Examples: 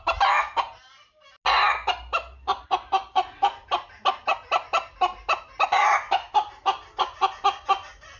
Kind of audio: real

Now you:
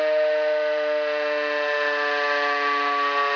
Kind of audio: real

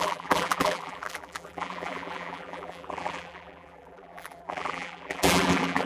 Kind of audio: fake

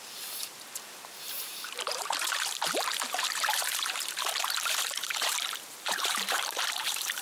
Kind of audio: fake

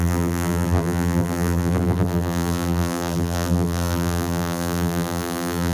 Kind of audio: fake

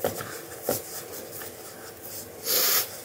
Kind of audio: fake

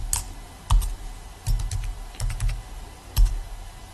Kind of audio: real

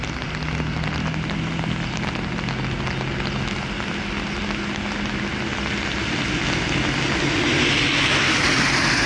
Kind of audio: real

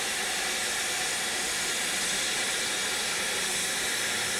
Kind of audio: real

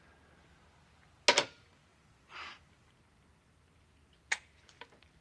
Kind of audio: real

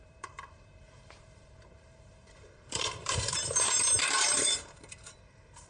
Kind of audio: fake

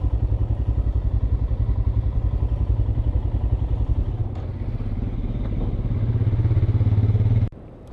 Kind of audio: real